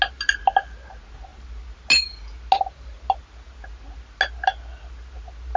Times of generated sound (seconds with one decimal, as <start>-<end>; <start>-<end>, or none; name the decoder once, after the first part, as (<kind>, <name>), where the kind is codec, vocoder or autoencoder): none